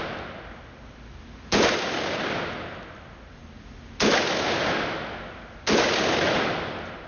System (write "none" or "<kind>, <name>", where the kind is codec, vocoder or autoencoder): none